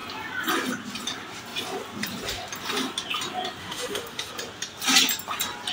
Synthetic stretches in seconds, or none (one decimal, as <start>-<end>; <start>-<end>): 3.6-4.3